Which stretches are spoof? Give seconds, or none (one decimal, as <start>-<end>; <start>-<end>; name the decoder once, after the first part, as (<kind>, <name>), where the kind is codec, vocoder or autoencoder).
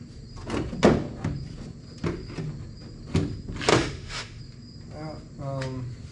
3.7-4.4 (autoencoder, DAC-VAE)